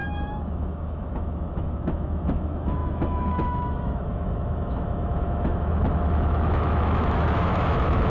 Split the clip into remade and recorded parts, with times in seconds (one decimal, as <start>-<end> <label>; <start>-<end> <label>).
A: 0.0-8.1 remade